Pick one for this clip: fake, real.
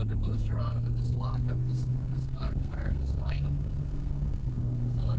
fake